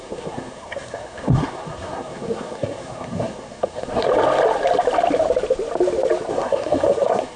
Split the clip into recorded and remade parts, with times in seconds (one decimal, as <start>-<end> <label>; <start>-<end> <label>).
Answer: 0.0-4.1 remade; 4.1-6.3 recorded; 6.3-7.4 remade